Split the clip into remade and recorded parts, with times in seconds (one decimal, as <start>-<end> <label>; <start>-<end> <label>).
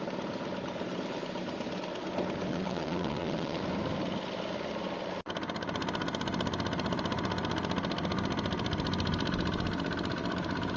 0.0-2.5 recorded; 2.5-3.6 remade; 3.6-10.8 recorded